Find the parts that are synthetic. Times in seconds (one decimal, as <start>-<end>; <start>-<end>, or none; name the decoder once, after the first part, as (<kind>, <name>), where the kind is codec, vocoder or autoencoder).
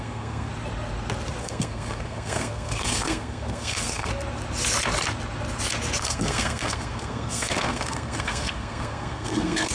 0.0-0.5 (codec, SNAC); 1.4-4.1; 6.0-9.7